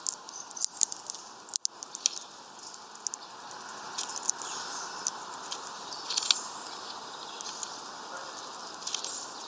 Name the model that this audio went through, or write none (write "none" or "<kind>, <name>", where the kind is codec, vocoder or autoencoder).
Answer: none